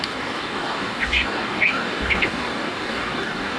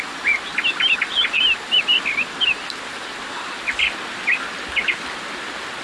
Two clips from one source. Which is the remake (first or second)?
first